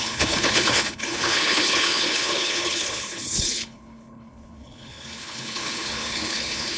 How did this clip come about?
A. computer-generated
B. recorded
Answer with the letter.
A